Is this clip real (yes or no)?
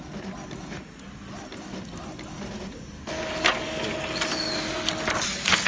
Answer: yes